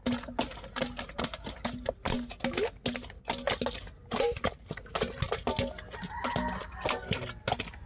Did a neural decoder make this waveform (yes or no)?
no